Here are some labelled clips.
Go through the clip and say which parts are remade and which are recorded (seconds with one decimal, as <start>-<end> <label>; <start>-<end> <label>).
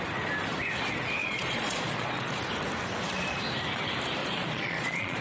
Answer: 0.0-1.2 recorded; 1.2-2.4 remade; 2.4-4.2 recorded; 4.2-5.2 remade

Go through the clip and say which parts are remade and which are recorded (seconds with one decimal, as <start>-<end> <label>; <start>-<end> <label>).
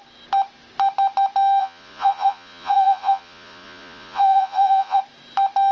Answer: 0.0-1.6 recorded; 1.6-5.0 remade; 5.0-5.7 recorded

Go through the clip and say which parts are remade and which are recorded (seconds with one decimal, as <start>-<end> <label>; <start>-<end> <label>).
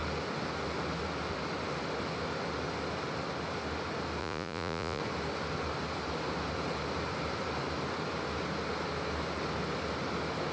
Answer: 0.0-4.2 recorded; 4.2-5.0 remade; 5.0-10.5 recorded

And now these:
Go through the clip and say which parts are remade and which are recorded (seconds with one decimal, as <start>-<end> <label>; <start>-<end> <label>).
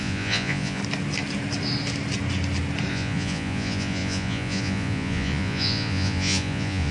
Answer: 0.0-0.8 remade; 0.8-2.9 recorded; 2.9-6.9 remade